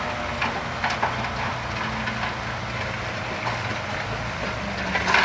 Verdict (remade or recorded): recorded